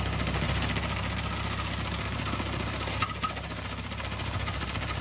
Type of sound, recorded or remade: recorded